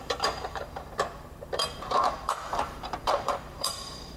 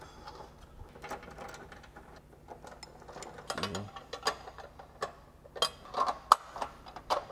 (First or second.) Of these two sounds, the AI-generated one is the first